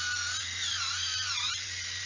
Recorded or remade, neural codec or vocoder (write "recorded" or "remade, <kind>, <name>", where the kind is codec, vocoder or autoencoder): remade, vocoder, BigVGAN v2